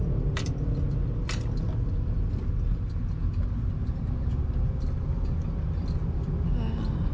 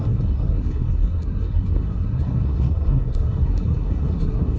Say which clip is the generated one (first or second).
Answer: second